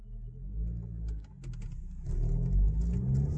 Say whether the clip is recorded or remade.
recorded